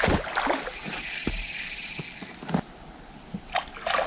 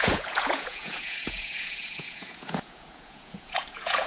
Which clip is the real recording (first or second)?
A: first